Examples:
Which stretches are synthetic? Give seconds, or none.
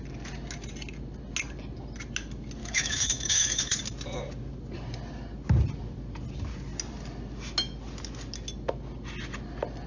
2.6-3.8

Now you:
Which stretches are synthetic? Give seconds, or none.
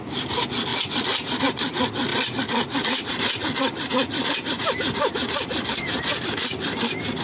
2.1-6.2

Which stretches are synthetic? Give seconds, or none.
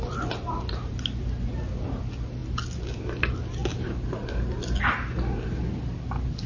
none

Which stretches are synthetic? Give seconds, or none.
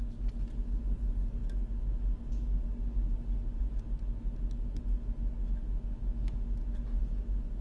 none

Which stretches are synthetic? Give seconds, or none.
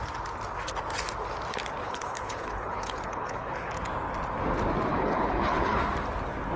1.8-3.7; 4.9-5.8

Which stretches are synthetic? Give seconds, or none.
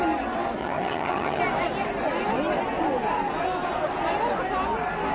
0.6-1.4